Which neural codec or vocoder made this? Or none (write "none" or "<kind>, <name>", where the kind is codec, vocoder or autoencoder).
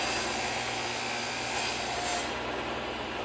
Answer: none